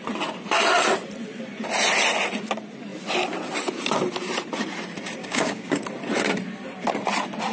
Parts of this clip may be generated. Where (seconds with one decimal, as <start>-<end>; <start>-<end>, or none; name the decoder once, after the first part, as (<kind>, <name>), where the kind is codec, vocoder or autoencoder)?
5.2-5.8 (codec, DAC)